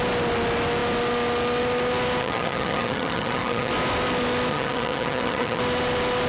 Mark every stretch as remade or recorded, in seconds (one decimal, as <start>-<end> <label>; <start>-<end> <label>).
0.0-2.2 recorded; 2.2-3.7 remade; 3.7-4.5 recorded; 4.5-5.6 remade; 5.6-6.3 recorded